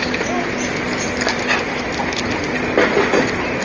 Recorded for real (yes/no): yes